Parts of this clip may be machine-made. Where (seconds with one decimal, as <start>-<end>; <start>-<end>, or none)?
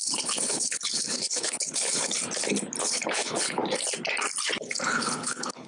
0.0-2.2; 2.8-3.6; 4.6-5.7